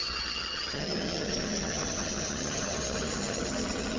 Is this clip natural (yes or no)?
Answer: no